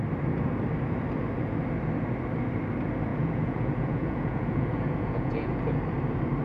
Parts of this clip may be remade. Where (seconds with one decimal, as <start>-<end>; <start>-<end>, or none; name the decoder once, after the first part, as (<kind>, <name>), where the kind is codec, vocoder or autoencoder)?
3.1-5.8 (vocoder, Vocos)

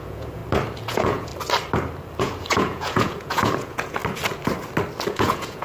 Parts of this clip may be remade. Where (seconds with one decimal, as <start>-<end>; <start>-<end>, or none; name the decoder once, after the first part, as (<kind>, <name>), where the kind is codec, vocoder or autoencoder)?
0.0-0.4 (vocoder, Vocos); 0.9-1.3; 2.2-4.0; 5.1-5.6

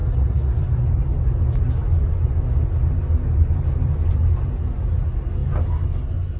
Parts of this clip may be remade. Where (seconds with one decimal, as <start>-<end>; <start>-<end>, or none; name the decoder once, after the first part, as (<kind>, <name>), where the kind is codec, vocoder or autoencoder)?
0.0-0.6 (vocoder, Vocos)

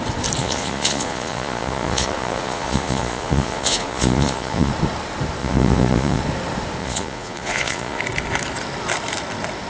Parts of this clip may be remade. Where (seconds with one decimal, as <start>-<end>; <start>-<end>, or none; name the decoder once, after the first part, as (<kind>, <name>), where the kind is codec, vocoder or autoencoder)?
0.4-4.7 (vocoder, Vocos); 5.4-6.2; 6.8-8.0

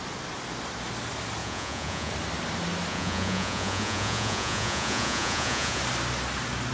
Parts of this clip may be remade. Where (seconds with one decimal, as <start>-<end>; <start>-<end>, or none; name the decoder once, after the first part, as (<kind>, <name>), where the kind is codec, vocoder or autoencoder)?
1.4-2.1 (vocoder, Vocos); 2.9-5.8

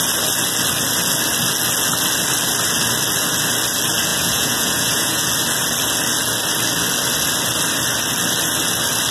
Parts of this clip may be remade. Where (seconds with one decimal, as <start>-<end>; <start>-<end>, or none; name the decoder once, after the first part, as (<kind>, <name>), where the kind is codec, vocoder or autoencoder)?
4.1-5.3 (vocoder, Vocos)